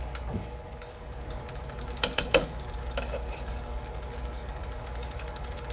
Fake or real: fake